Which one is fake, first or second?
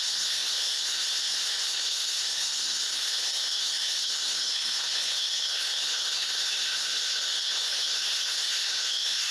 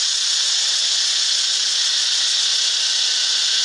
first